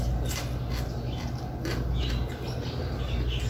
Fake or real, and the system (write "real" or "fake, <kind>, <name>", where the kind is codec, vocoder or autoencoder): real